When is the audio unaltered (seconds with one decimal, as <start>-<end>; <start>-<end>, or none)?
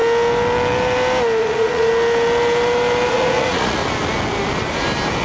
0.0-1.4; 1.9-3.1; 3.8-5.2